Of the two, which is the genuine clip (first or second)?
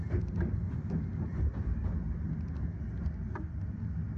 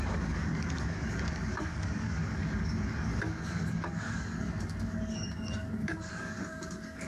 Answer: first